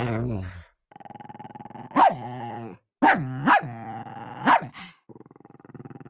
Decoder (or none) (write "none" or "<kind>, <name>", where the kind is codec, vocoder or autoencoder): none